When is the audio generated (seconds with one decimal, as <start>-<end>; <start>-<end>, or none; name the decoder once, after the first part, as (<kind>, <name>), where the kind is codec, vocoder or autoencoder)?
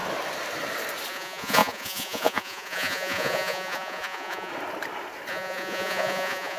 1.1-4.5 (vocoder, Vocos); 5.3-6.6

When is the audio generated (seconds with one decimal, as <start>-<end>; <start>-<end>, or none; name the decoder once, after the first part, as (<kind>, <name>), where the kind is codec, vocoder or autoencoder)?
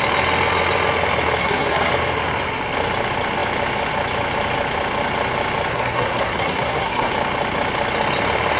1.4-1.9 (codec, SNAC); 5.7-7.1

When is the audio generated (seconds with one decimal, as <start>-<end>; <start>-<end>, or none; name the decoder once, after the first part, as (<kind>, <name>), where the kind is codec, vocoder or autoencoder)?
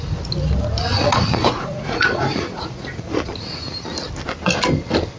0.8-3.3 (vocoder, Vocos)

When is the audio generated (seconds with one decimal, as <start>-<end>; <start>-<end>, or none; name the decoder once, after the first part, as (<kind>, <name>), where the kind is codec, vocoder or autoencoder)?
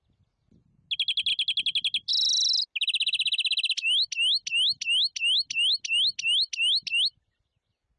none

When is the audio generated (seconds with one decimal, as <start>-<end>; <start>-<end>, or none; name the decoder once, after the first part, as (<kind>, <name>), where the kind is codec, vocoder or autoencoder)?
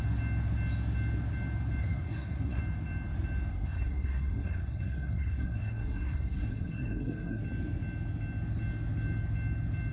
1.8-2.6 (codec, SNAC); 3.5-7.4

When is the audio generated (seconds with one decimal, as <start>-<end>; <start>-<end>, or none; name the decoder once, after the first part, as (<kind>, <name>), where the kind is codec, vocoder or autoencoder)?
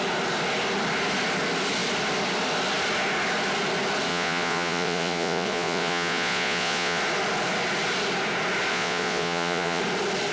4.1-7.0 (vocoder, Vocos); 8.7-9.8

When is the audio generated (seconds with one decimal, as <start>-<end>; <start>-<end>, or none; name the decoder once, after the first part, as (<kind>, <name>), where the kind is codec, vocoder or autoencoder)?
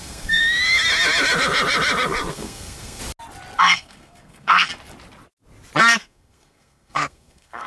0.0-0.4 (codec, SNAC); 2.3-3.0; 3.6-4.7; 5.8-7.7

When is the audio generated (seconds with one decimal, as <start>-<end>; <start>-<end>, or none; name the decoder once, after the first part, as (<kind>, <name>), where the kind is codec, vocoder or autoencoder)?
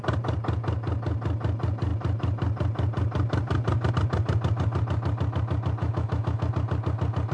5.8-6.5 (autoencoder, DAC-VAE)